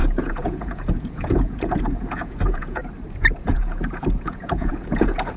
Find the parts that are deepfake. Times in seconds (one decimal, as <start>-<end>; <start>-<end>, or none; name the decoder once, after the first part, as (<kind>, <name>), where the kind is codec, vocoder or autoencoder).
0.0-2.8 (vocoder, Vocos); 3.4-5.4